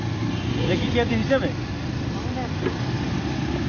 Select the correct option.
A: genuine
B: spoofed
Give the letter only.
A